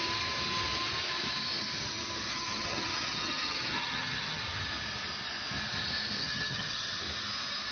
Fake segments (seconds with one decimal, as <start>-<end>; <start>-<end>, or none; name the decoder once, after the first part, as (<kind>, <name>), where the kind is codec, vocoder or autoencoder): 2.3-4.4 (vocoder, HiFi-GAN); 6.2-7.0